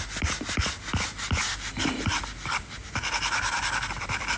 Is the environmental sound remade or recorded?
recorded